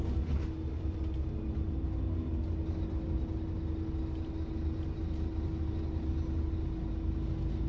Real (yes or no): yes